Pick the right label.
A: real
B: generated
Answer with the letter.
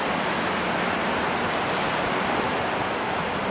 A